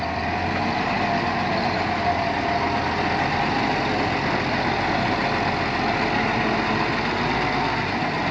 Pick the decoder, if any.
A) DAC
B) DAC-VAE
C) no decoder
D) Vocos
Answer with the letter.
C